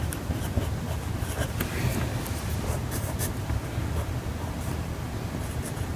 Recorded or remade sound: recorded